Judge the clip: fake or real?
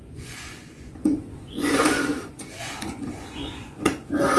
fake